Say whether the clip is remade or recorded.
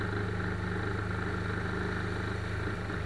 recorded